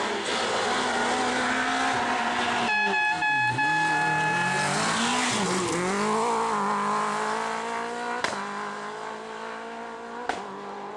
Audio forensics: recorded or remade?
recorded